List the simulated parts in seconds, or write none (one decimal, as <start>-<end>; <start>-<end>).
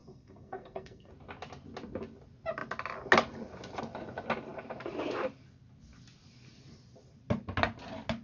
0.0-1.1